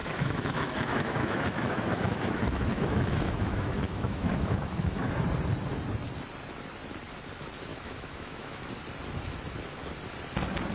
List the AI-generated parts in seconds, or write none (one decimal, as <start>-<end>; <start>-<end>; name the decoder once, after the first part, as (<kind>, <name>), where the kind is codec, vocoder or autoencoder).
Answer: 0.0-5.1 (autoencoder, DAC-VAE); 7.7-8.7

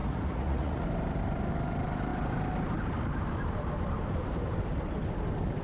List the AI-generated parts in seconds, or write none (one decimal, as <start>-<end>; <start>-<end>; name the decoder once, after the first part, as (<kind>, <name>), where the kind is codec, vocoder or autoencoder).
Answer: 0.0-0.8 (vocoder, Vocos)

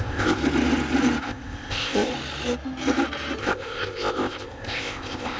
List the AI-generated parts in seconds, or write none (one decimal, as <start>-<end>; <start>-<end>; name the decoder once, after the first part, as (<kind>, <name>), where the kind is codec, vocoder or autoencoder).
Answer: 0.0-0.4 (codec, ZipCodec); 1.2-2.1; 3.4-5.4

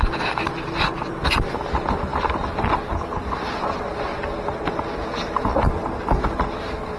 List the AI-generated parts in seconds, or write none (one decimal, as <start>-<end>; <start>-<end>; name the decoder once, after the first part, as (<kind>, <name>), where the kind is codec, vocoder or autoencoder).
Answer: 2.1-3.8 (vocoder, BigVGAN v2); 5.8-6.4

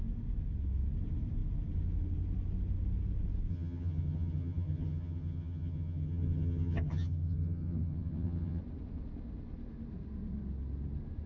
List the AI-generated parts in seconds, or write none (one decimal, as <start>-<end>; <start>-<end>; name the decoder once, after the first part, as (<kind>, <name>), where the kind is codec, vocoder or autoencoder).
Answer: 3.5-8.6 (vocoder, HiFi-GAN)